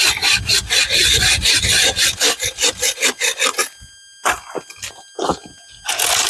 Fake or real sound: real